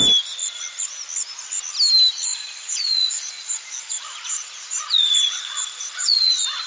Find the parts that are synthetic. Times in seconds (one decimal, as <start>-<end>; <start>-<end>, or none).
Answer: 2.3-6.3